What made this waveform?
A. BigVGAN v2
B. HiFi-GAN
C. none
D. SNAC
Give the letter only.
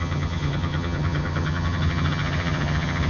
B